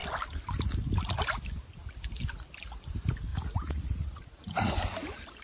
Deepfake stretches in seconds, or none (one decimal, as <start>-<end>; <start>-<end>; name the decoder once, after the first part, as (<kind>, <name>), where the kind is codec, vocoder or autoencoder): 3.3-4.7 (vocoder, Vocos)